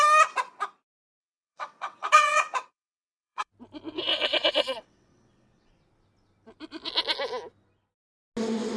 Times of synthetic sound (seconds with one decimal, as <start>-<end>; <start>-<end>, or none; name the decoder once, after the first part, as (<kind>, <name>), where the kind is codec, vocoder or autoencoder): 1.2-3.5 (vocoder, WaveNeXt); 4.1-5.7